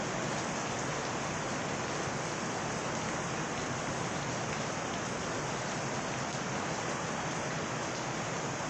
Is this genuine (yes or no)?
yes